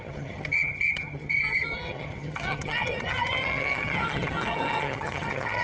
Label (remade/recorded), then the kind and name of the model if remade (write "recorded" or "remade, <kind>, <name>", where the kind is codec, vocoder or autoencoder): remade, vocoder, HiFi-GAN